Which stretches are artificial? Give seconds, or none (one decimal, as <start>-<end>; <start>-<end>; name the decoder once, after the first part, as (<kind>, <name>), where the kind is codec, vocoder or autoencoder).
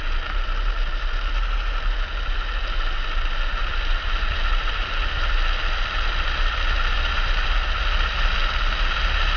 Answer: 3.6-7.8 (vocoder, BigVGAN v2)